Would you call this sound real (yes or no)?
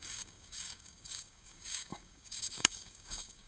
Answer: no